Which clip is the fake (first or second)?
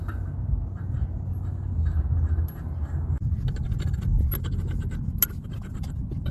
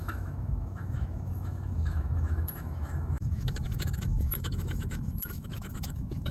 second